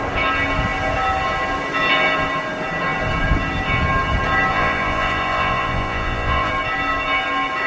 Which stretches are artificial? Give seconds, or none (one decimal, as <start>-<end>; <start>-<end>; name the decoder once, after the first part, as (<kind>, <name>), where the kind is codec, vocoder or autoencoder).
4.5-6.5 (vocoder, Vocos)